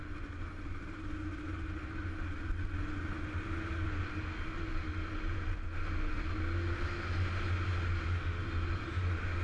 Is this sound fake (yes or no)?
no